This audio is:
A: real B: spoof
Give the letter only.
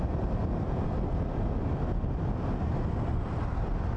A